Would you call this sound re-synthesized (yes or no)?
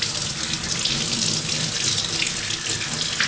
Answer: no